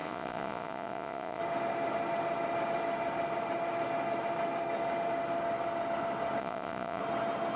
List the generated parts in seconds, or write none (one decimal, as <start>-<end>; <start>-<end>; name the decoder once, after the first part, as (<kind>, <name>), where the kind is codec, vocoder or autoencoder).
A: 0.0-1.4 (vocoder, Vocos); 6.4-7.0

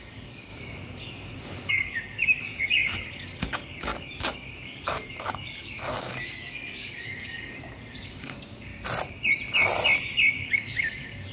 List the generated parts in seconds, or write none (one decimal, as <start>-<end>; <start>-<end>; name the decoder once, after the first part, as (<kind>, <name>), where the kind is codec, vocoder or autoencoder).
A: 0.0-8.7 (codec, DAC); 10.4-11.3

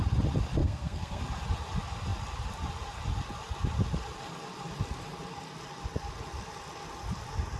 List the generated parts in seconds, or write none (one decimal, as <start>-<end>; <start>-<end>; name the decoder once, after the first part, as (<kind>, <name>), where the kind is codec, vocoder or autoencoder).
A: 0.6-1.2 (codec, SNAC)

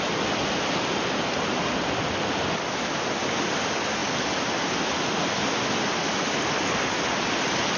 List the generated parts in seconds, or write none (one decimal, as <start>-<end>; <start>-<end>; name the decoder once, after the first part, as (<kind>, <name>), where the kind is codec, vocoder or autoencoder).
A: none

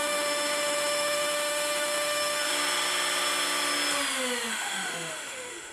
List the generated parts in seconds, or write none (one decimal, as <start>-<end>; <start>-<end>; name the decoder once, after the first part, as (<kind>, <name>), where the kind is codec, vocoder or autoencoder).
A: 0.0-2.5 (autoencoder, DAC-VAE); 4.5-5.7

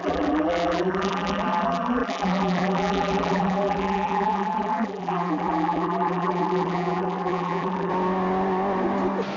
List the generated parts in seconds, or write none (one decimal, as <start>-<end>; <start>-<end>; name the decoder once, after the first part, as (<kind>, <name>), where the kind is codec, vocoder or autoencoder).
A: 0.0-7.9 (vocoder, BigVGAN v2)

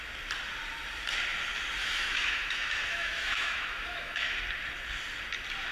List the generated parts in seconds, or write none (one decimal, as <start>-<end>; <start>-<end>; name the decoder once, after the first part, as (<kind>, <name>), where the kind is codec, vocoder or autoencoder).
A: 1.8-4.4 (autoencoder, DAC-VAE)

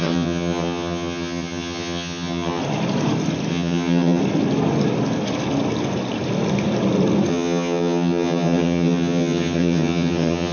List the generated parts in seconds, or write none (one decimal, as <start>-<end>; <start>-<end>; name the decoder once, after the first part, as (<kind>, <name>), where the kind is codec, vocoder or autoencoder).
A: 0.0-2.6 (vocoder, HiFi-GAN); 3.5-4.2; 7.3-10.5